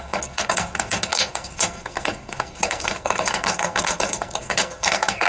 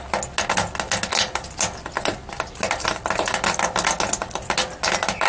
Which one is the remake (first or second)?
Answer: first